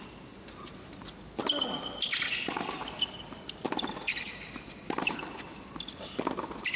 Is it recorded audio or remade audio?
recorded